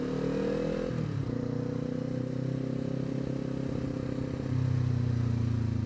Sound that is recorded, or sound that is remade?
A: recorded